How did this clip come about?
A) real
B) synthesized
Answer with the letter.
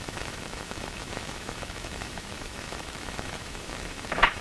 B